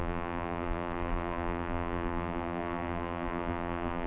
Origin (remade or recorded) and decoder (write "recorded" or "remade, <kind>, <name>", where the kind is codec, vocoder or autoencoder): remade, vocoder, BigVGAN v2